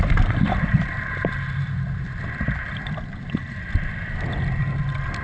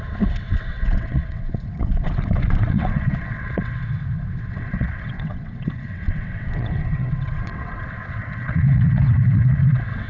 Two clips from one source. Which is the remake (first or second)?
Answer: second